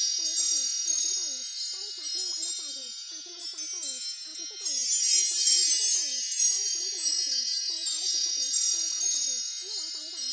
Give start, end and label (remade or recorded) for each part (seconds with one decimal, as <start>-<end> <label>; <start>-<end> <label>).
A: 0.0-10.3 remade